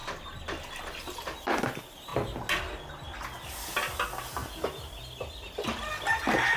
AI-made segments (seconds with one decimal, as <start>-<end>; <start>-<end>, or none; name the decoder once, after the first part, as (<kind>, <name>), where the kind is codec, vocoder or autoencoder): none